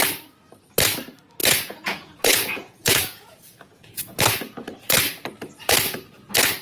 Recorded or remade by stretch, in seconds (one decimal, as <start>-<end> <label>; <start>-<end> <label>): 0.0-1.4 recorded; 1.4-4.2 remade; 4.2-6.6 recorded